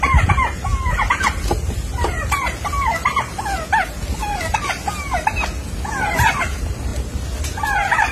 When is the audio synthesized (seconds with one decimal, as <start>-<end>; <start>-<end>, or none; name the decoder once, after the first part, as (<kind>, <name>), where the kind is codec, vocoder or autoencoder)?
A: none